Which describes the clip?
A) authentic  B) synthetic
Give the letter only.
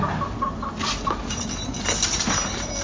A